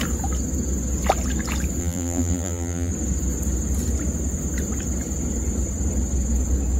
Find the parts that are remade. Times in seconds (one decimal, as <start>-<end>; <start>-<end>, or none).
1.8-2.9